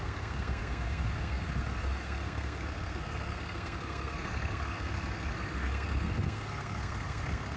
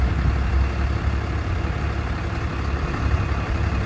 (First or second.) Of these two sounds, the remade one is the first